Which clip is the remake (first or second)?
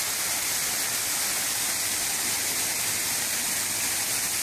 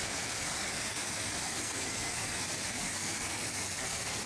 second